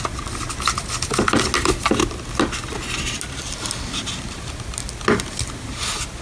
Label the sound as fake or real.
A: real